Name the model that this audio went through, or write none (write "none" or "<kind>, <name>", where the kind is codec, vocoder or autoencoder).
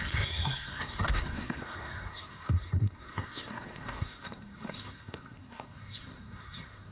codec, SNAC